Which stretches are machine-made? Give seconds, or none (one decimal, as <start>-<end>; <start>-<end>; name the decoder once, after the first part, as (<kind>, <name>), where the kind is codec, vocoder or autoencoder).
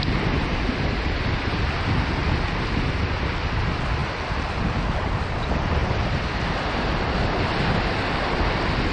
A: none